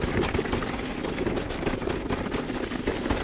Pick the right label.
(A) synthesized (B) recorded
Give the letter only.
B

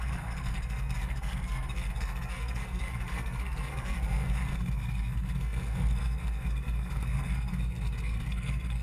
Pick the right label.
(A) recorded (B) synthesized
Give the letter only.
B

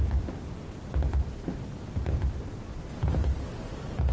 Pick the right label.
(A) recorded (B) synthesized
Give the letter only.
A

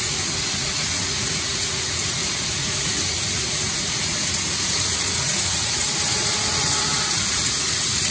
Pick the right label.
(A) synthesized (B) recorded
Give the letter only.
A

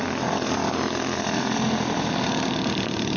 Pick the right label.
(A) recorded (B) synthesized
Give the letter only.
A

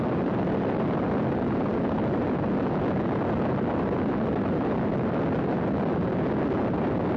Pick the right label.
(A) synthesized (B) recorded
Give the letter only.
B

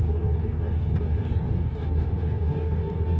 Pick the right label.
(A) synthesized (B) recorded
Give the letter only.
A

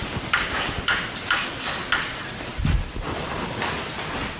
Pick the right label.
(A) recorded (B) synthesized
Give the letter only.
A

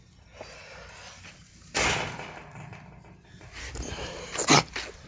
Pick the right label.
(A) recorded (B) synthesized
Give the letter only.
A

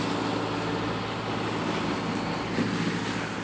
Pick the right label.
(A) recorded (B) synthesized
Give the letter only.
A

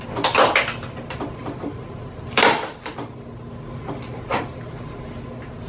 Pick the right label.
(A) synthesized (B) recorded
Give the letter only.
B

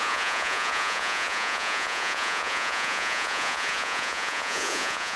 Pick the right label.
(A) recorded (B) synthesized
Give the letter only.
B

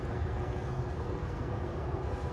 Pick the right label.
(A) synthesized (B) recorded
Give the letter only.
A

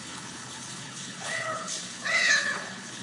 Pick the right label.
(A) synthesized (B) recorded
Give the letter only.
A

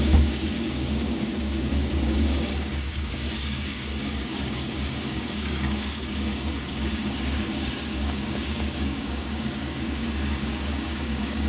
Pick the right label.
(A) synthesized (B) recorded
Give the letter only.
A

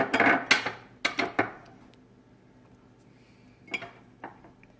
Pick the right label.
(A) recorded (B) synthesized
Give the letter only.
A